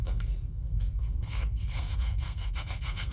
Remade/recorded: remade